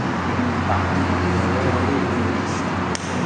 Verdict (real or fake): real